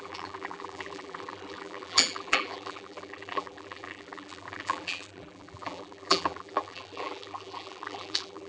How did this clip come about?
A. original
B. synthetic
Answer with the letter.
B